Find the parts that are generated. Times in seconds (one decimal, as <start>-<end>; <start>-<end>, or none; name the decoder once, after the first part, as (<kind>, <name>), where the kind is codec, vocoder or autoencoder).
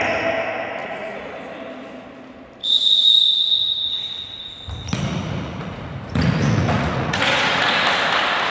0.8-1.4 (vocoder, Vocos); 2.6-3.2; 4.8-7.6